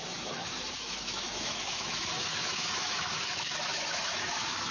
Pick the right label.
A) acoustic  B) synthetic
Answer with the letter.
B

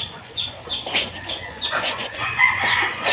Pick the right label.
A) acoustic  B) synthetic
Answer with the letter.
B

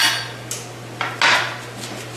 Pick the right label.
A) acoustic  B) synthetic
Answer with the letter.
A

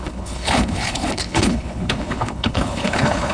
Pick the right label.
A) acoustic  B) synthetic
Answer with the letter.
B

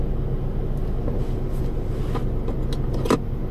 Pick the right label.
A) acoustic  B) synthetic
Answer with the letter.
A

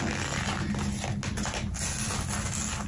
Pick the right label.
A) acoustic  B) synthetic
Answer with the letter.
A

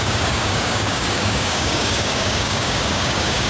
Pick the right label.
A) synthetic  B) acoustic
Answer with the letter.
A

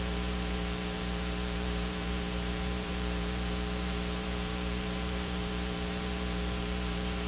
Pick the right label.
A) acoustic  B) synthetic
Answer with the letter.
B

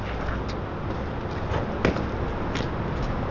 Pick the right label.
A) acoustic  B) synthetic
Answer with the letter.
A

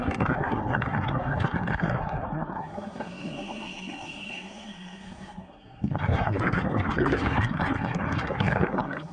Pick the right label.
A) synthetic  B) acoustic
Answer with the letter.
A